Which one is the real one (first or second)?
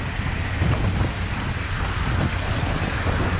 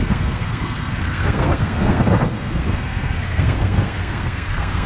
first